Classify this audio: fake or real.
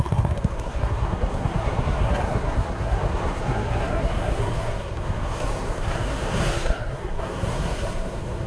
fake